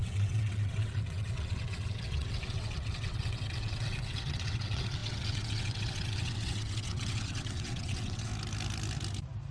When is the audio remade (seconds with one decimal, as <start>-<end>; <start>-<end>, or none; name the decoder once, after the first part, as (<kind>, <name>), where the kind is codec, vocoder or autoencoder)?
0.0-8.3 (vocoder, WaveNeXt)